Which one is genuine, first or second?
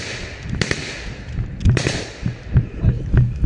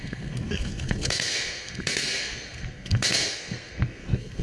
first